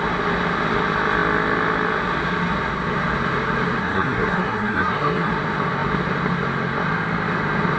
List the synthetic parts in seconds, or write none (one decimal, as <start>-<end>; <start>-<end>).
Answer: 3.8-5.3